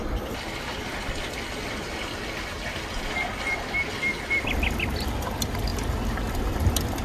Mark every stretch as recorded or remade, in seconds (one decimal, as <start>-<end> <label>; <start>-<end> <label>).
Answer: 0.0-7.0 recorded

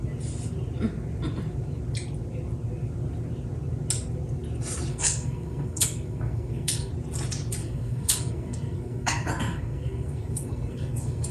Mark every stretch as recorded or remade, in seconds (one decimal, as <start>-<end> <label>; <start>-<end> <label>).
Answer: 0.0-4.9 recorded; 4.9-6.9 remade; 6.9-7.6 recorded; 7.6-11.3 remade

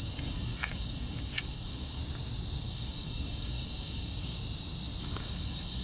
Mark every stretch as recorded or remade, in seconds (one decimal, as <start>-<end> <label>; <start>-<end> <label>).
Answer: 0.0-2.0 remade; 2.0-2.6 recorded; 2.6-4.4 remade; 4.4-5.0 recorded; 5.0-5.8 remade